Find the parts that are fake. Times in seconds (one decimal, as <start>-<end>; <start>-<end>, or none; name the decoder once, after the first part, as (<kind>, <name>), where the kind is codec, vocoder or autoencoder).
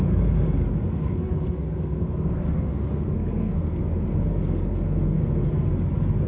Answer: 0.8-3.8 (codec, SNAC); 4.3-5.7